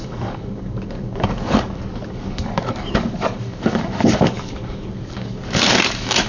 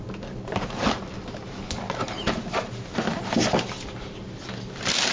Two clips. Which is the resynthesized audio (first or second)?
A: first